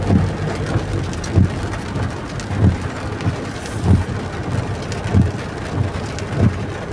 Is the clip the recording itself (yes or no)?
yes